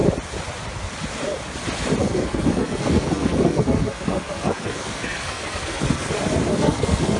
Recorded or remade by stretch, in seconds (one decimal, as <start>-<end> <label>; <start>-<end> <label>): 0.0-2.0 recorded; 2.0-6.1 remade; 6.1-6.5 recorded; 6.5-7.2 remade